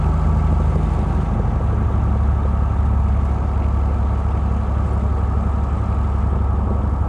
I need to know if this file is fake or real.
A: real